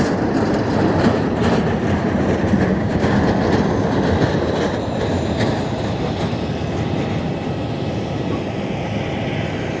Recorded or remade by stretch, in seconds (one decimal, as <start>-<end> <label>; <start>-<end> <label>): 0.0-2.7 recorded; 2.7-3.2 remade; 3.2-9.8 recorded